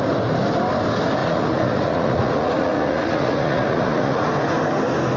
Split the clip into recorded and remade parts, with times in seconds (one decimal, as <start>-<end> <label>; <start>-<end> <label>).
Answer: 0.0-1.2 recorded; 1.2-4.3 remade; 4.3-5.2 recorded